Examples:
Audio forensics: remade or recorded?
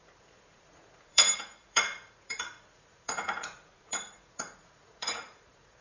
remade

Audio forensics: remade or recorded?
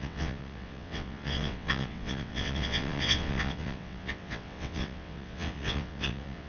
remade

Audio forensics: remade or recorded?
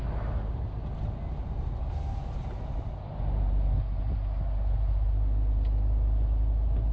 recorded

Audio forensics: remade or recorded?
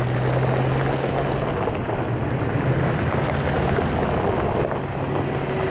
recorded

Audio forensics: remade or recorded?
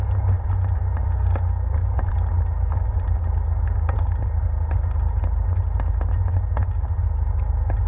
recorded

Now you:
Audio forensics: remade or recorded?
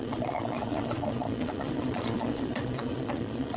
remade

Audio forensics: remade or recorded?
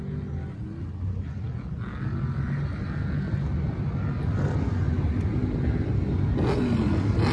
recorded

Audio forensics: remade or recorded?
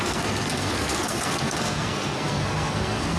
remade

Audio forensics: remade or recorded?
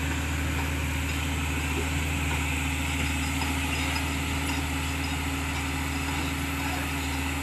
recorded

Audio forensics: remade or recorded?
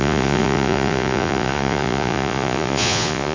remade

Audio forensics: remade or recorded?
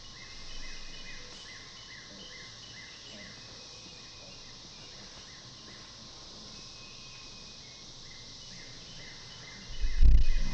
recorded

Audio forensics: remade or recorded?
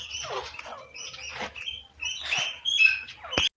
recorded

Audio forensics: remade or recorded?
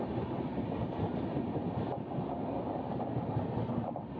recorded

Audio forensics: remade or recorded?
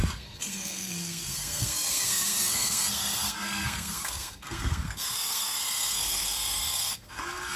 remade